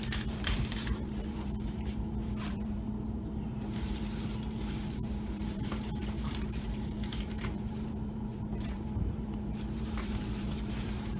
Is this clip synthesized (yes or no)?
yes